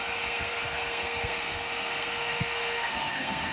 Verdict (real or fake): fake